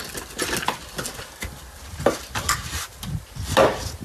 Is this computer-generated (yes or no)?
no